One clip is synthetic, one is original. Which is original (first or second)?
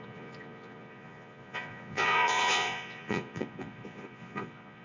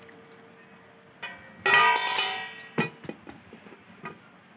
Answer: second